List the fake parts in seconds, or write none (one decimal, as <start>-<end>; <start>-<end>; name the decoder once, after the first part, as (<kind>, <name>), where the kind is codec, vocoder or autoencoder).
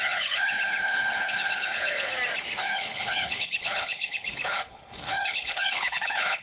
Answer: 0.0-2.1 (codec, HILCodec); 2.6-6.4